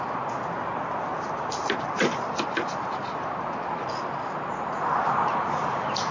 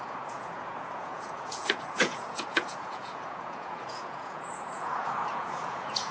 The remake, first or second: second